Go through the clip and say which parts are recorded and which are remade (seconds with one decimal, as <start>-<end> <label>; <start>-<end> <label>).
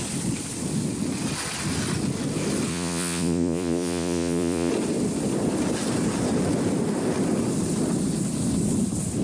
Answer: 0.0-2.7 recorded; 2.7-4.7 remade; 4.7-9.2 recorded